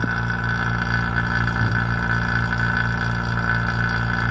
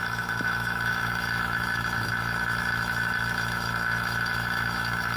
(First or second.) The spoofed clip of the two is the second